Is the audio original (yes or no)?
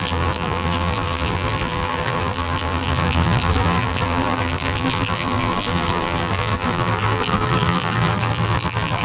no